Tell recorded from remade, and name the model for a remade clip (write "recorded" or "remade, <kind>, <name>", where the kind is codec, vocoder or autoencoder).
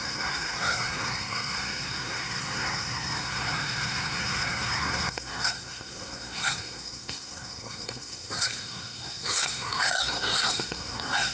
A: remade, codec, SNAC